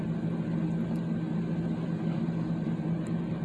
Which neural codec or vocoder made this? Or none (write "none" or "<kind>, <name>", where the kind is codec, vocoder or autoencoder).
none